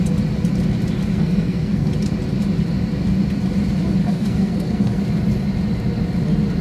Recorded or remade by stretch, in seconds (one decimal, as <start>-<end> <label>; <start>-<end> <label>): 0.0-1.1 recorded; 1.1-1.9 remade; 1.9-4.0 recorded; 4.0-5.0 remade; 5.0-6.6 recorded